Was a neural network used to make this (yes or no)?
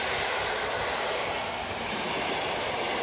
no